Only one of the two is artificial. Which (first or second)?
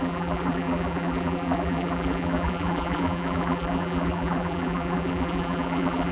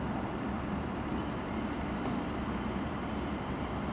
first